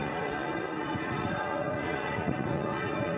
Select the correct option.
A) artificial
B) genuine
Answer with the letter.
A